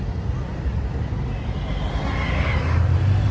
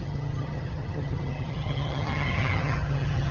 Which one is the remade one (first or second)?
second